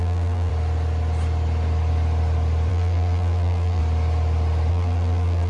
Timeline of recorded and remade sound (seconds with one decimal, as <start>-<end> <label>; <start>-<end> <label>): 0.0-0.5 remade; 0.5-2.7 recorded; 2.7-3.8 remade; 3.8-4.7 recorded; 4.7-5.5 remade